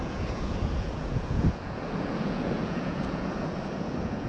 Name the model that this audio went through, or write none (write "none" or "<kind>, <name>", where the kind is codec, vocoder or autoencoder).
vocoder, Vocos